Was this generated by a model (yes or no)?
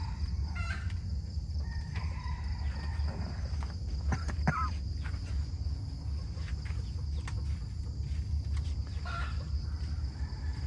no